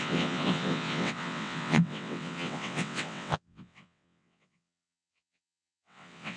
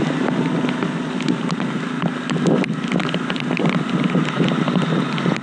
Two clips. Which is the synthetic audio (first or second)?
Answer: first